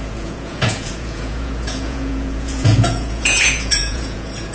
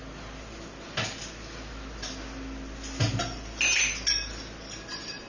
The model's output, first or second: first